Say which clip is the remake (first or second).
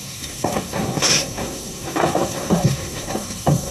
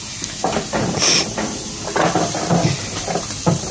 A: first